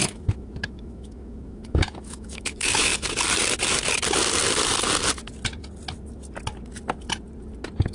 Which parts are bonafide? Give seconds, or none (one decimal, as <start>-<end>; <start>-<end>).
2.9-7.9